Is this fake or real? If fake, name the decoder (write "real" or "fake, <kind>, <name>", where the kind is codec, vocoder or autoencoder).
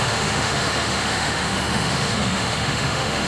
fake, autoencoder, DAC-VAE